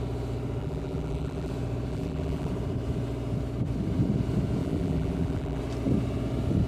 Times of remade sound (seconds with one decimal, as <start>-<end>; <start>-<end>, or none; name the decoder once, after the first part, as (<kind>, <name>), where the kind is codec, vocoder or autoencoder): 0.6-1.5 (vocoder, BigVGAN v2); 1.9-2.5; 4.6-5.6